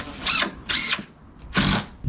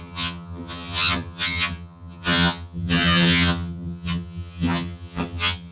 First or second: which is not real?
second